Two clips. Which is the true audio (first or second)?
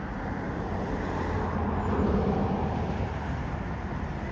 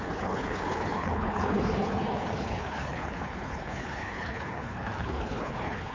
first